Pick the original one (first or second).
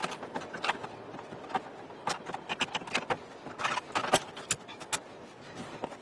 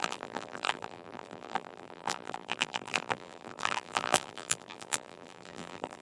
first